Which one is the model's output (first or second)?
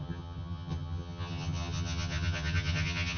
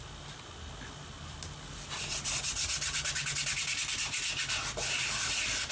first